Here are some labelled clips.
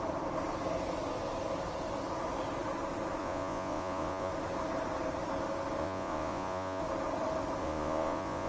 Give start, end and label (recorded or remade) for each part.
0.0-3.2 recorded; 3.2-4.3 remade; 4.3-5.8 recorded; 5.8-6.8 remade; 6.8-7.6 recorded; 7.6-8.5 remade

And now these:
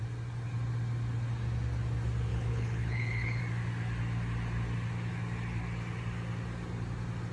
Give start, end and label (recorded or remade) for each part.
0.0-2.3 recorded; 2.3-3.4 remade; 3.4-7.3 recorded

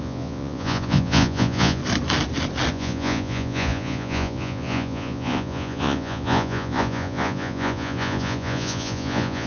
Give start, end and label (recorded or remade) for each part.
0.0-1.8 remade; 1.8-2.7 recorded; 2.7-9.5 remade

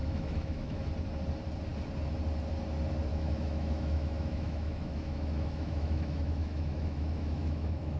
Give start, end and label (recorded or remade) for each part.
0.0-0.9 remade; 0.9-3.1 recorded; 3.1-8.0 remade

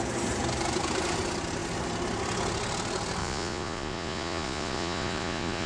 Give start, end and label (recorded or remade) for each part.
0.0-3.2 recorded; 3.2-5.7 remade

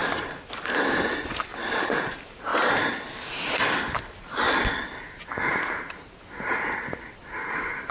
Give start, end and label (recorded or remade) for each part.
0.0-1.0 recorded; 1.0-1.5 remade; 1.5-2.1 recorded; 2.1-2.5 remade; 2.5-7.2 recorded; 7.2-7.9 remade

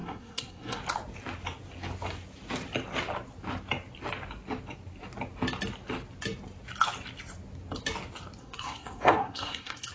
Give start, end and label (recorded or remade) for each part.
0.0-0.8 remade; 0.8-8.4 recorded; 8.4-9.9 remade